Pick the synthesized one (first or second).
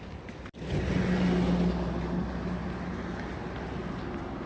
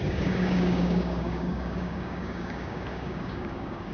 second